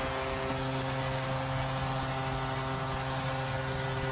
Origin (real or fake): real